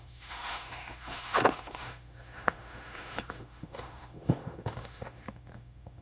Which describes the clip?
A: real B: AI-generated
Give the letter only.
B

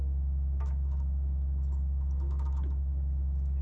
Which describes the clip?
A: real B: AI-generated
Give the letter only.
B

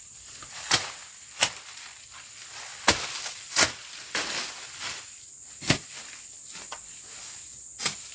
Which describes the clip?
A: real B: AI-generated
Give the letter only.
A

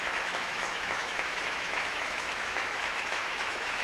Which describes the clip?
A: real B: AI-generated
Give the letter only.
B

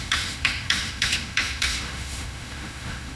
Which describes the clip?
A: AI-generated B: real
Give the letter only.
A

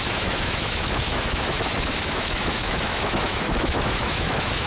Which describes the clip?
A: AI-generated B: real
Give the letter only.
A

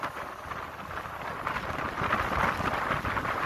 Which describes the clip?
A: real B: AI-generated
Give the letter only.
A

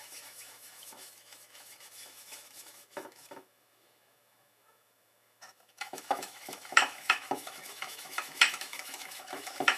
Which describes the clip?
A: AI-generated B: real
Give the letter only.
A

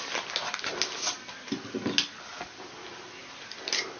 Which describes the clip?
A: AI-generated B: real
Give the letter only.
B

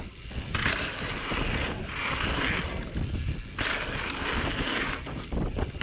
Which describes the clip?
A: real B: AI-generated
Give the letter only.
A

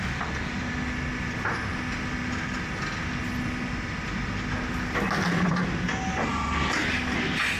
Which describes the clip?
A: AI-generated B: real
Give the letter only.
B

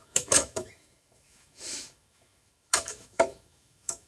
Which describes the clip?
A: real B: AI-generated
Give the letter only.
B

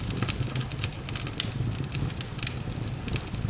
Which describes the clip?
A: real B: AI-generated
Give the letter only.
A